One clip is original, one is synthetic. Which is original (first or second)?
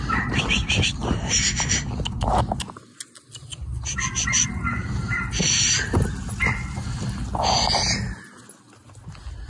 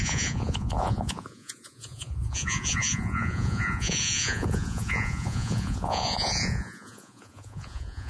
first